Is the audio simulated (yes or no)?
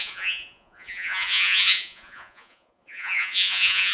yes